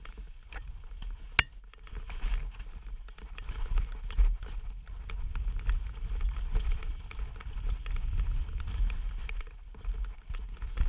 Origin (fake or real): real